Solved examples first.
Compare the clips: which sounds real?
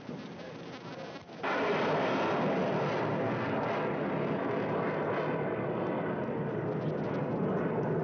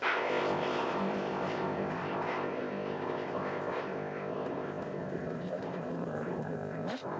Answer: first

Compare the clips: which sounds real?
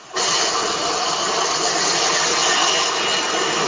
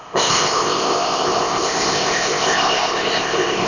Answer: first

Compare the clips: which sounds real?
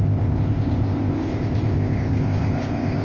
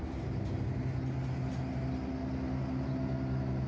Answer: second